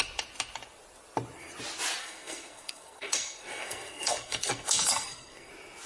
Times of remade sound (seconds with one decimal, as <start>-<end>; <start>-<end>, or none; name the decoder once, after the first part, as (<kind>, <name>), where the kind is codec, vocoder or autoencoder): 2.0-5.5 (codec, SNAC)